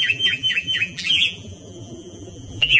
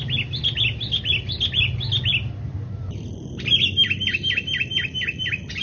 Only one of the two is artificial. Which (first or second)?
first